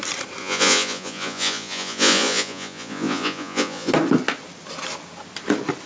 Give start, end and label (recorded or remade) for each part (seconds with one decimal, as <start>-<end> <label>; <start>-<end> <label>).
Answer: 0.0-0.4 recorded; 0.4-3.9 remade; 3.9-5.9 recorded